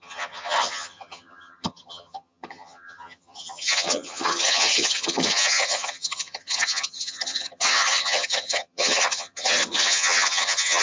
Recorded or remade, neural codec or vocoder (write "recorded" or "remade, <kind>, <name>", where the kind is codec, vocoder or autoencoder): remade, vocoder, HiFi-GAN